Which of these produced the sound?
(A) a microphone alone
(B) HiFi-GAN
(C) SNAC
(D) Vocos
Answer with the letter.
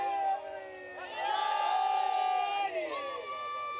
A